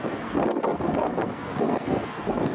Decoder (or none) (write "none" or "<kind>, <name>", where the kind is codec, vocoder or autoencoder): codec, SNAC